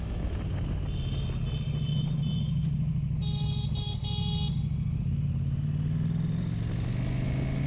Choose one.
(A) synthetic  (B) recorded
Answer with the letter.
B